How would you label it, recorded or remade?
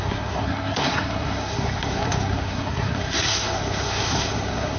remade